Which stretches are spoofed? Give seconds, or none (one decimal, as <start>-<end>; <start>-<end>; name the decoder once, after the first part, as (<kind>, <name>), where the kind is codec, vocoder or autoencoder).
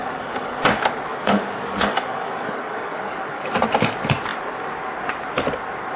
0.0-0.6 (codec, DAC); 1.1-3.5